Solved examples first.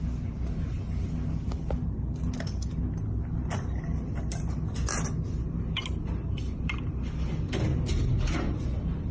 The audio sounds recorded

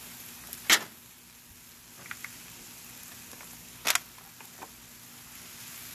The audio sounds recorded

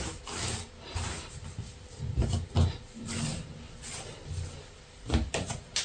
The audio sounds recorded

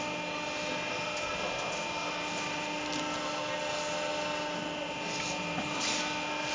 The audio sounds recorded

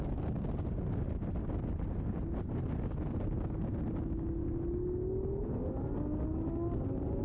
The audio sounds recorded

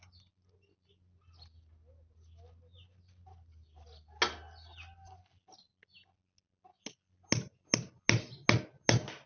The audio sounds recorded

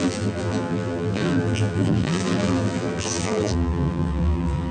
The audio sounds remade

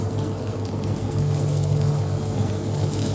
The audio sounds remade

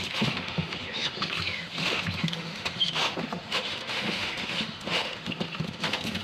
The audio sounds remade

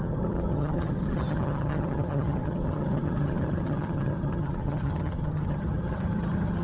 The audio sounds remade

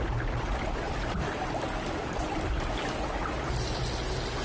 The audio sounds recorded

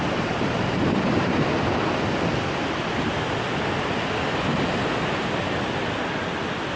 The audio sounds recorded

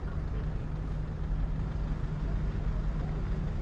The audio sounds recorded